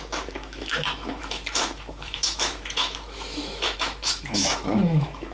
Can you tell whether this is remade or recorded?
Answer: remade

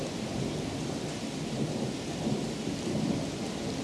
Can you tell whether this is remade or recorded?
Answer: remade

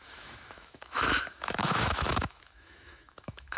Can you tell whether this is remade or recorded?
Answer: remade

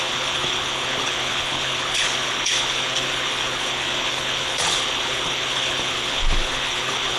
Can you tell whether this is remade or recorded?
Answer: remade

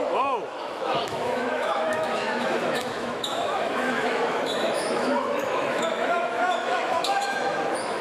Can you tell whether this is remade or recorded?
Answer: remade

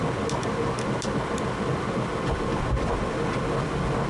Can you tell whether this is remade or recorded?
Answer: recorded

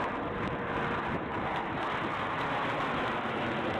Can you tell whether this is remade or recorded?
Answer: recorded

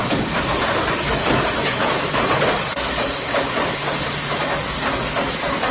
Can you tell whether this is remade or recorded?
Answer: recorded